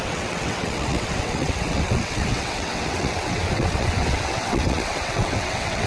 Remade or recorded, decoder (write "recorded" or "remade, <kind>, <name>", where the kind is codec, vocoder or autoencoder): remade, vocoder, WaveNeXt